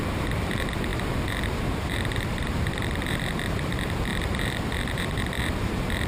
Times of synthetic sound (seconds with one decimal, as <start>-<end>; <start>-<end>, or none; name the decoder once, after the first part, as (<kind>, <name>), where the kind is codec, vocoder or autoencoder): 0.0-6.1 (vocoder, BigVGAN v2)